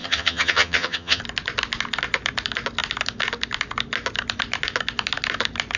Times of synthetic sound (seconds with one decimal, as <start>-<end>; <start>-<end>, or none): 0.0-1.2